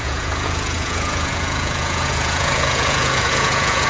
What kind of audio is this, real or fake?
fake